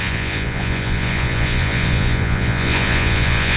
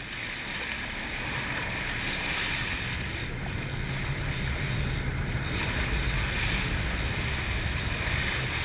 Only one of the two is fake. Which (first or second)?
first